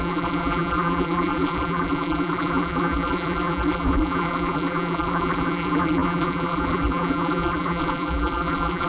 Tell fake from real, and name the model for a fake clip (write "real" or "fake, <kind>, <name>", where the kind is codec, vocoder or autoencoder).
fake, vocoder, BigVGAN v2